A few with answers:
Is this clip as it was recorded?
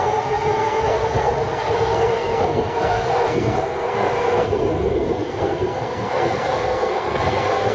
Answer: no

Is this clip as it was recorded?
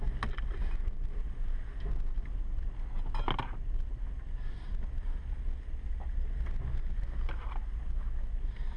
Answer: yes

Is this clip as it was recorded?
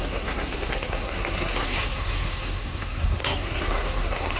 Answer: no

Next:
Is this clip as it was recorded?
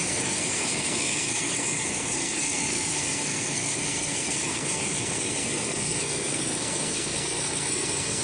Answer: no